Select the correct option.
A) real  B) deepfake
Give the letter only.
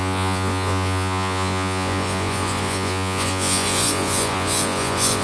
B